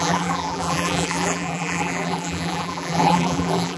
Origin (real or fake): fake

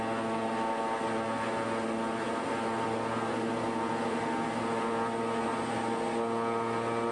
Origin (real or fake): real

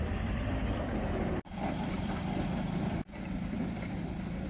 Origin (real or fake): fake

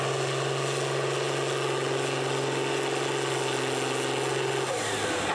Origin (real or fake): real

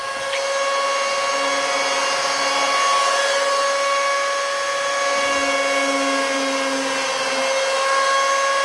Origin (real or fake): real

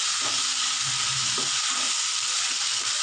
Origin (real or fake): real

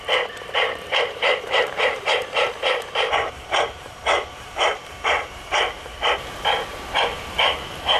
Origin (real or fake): fake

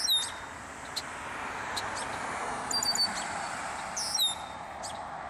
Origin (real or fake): real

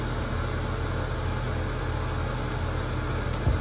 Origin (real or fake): real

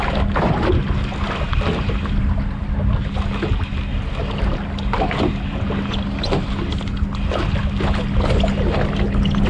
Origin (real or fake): real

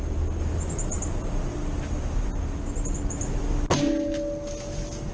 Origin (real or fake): real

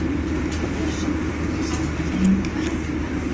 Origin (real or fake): real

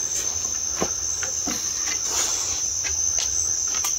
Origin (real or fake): real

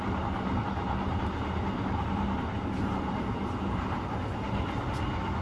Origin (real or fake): real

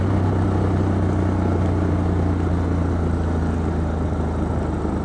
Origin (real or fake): real